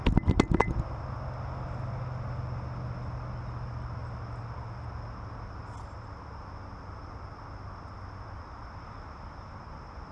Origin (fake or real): real